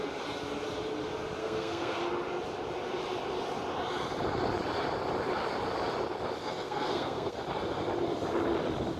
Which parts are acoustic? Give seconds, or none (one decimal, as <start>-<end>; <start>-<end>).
0.0-1.4; 2.0-6.4; 7.4-9.0